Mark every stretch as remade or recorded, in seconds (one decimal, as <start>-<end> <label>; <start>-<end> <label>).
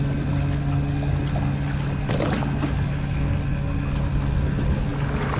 0.0-5.4 recorded